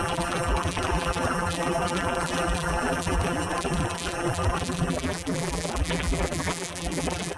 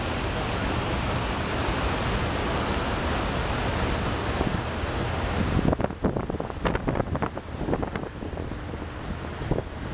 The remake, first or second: first